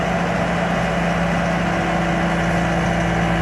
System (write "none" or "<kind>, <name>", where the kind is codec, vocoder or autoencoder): none